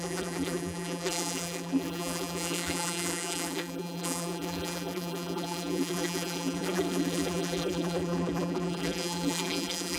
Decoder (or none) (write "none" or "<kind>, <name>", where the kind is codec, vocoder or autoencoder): vocoder, BigVGAN v2